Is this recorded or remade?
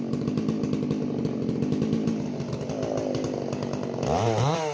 recorded